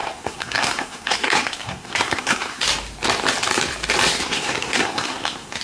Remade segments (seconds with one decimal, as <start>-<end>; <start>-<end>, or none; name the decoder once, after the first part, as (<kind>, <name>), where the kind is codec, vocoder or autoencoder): 0.0-2.6 (codec, SNAC); 4.2-5.6